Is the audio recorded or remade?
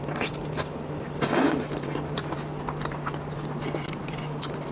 recorded